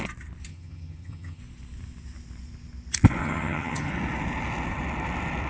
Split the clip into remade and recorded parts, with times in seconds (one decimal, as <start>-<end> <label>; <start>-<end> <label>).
0.0-0.5 recorded; 0.5-1.4 remade; 1.4-3.2 recorded; 3.2-3.9 remade; 3.9-5.5 recorded